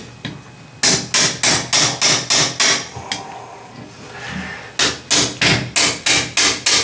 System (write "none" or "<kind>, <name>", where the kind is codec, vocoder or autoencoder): none